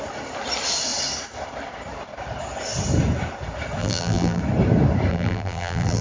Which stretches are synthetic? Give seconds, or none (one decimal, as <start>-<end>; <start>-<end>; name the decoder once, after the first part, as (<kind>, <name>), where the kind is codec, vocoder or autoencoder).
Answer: 3.8-4.4 (vocoder, BigVGAN v2); 5.1-6.0

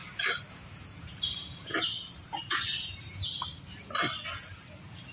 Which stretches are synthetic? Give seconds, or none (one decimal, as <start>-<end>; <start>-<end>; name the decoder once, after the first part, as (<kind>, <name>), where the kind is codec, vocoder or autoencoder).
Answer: 0.0-3.1 (vocoder, BigVGAN v2)